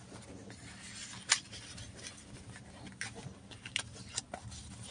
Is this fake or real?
real